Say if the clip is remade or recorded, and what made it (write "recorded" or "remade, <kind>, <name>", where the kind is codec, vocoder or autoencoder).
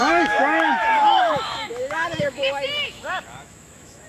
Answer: remade, autoencoder, DAC-VAE